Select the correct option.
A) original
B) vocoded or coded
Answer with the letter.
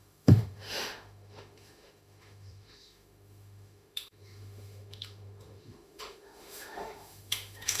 B